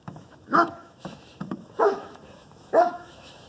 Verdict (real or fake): fake